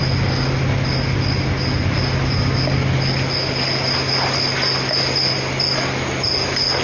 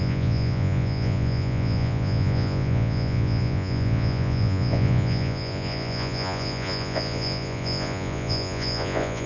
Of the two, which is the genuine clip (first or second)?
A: first